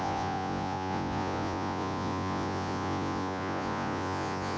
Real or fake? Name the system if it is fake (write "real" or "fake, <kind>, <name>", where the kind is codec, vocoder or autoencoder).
fake, vocoder, Vocos